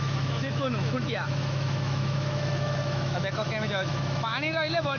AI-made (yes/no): yes